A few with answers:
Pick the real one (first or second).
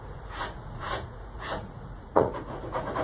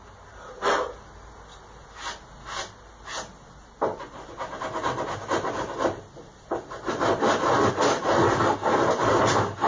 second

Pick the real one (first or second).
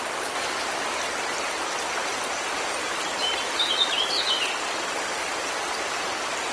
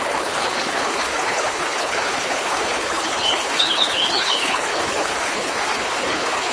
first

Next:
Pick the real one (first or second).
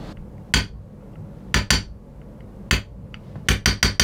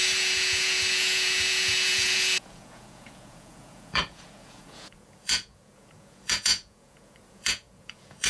first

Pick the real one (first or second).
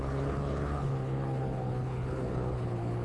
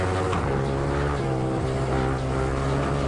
second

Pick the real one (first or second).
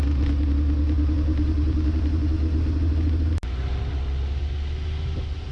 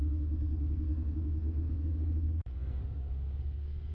first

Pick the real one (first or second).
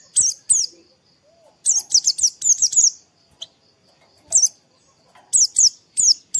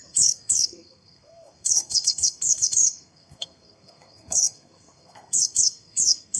first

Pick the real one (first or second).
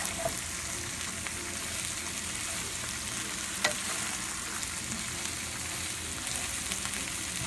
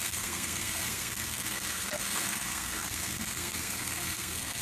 first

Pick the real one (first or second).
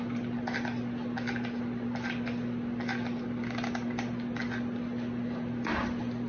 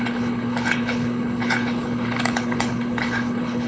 first